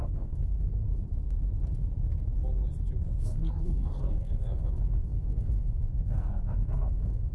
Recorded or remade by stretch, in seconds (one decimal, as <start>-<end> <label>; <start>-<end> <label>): 0.0-1.0 remade; 1.0-3.2 recorded; 3.2-7.3 remade